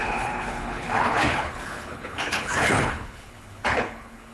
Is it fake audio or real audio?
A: fake